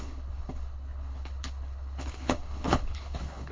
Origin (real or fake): fake